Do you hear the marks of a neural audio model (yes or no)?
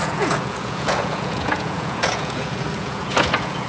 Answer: yes